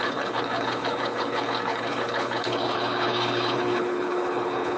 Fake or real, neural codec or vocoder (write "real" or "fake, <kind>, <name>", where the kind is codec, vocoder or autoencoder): fake, codec, HILCodec